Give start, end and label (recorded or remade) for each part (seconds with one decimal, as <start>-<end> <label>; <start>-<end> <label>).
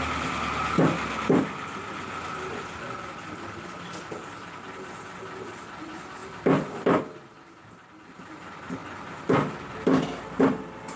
0.0-6.2 recorded; 6.2-7.0 remade; 7.0-11.0 recorded